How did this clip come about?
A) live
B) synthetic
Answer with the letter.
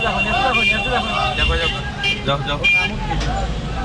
A